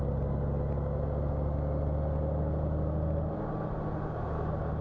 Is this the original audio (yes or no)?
yes